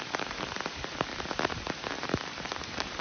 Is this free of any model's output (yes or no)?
no